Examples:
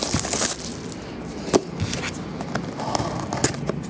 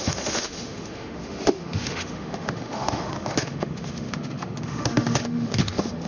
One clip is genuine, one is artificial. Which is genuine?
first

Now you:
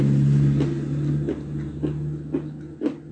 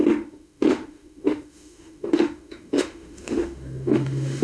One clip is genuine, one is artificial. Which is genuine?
first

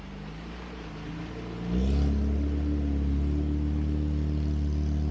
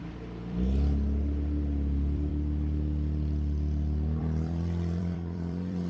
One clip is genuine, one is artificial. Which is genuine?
first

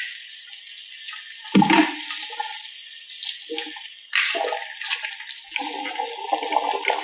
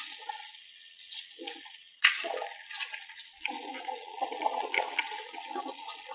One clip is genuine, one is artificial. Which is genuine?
first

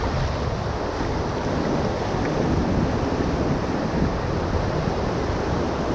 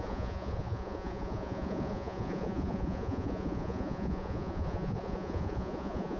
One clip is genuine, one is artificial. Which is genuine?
first